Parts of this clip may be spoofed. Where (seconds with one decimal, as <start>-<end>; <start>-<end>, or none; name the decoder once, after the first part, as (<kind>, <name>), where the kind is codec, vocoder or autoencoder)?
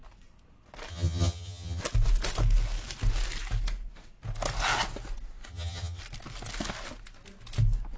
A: 0.9-1.8 (vocoder, HiFi-GAN); 5.5-6.0